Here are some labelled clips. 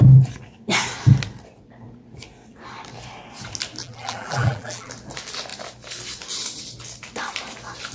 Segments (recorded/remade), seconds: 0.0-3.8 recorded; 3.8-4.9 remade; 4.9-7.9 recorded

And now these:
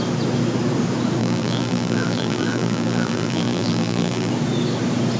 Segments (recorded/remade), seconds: 0.0-1.2 recorded; 1.2-4.3 remade; 4.3-5.2 recorded

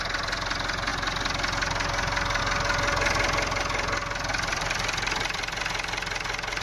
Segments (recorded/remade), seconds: 0.0-4.3 recorded; 4.3-5.6 remade; 5.6-6.6 recorded